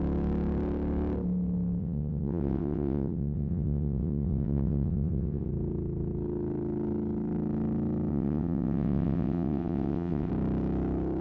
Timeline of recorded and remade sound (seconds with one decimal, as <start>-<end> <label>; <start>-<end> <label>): 0.0-1.8 recorded; 1.8-5.5 remade; 5.5-8.1 recorded; 8.1-10.3 remade; 10.3-11.2 recorded

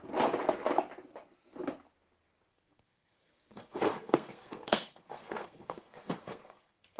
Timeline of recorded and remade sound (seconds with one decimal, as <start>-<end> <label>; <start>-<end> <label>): 0.0-2.5 recorded; 2.5-7.0 remade

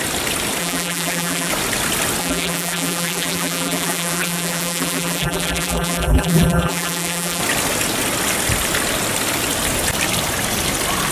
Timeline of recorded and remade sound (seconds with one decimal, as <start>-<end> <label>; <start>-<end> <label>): 0.0-0.6 recorded; 0.6-1.5 remade; 1.5-2.2 recorded; 2.2-7.4 remade; 7.4-11.1 recorded

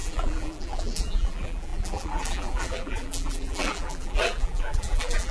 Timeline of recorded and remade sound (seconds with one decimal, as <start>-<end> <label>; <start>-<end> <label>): 0.0-5.3 remade

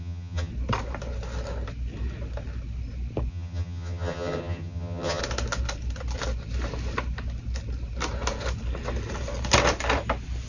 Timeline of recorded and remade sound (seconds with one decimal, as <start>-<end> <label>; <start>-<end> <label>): 0.0-0.5 remade; 0.5-3.3 recorded; 3.3-5.2 remade; 5.2-10.5 recorded

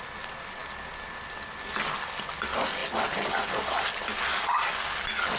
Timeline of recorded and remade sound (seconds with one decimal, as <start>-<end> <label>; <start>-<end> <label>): 0.0-5.4 recorded

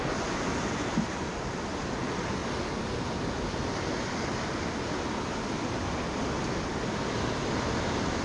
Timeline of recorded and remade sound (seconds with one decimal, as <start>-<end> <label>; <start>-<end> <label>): 0.0-8.2 recorded

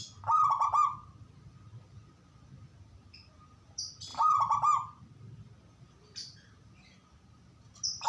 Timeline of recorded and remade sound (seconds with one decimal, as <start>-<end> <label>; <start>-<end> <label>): 0.0-8.1 recorded